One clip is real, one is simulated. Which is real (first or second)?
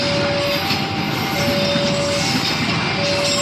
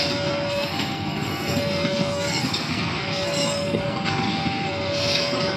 first